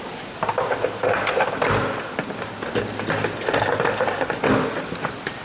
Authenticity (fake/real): real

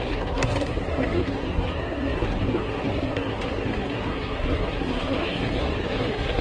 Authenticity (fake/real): fake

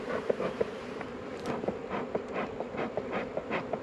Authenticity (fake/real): fake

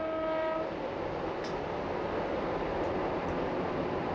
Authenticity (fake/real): real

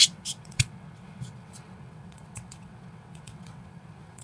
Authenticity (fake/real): fake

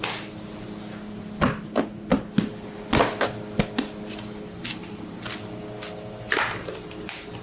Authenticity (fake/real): real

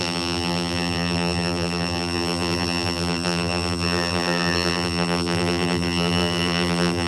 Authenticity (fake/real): fake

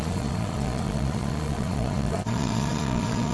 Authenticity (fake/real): fake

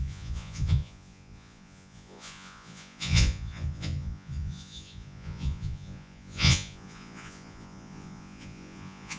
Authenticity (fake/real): fake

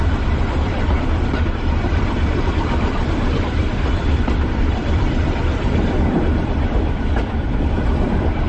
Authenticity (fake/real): fake